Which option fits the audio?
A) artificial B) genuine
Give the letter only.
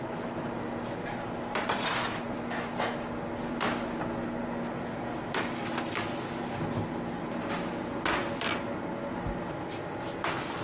B